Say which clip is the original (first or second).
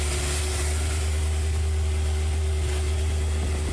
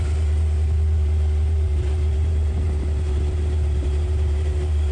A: first